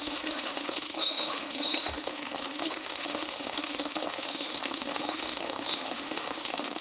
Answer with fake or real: fake